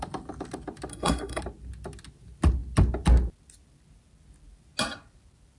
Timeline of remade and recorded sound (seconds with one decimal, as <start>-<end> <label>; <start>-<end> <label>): 0.0-0.9 recorded; 0.9-1.4 remade; 1.4-5.6 recorded